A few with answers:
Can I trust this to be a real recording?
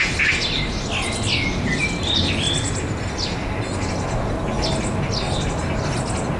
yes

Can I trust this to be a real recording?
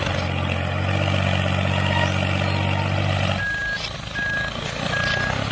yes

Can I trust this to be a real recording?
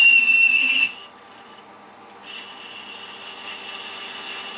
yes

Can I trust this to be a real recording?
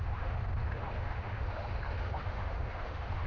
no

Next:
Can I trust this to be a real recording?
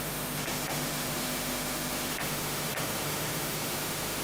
no